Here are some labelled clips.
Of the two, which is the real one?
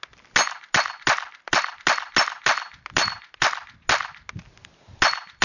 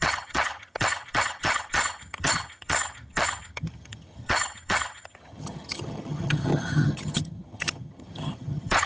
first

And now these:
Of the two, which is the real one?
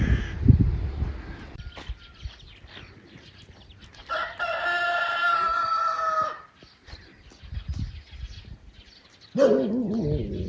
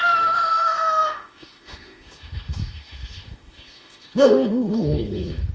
first